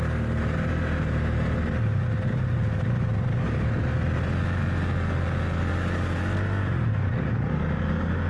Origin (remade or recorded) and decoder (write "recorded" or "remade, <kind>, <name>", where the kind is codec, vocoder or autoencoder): recorded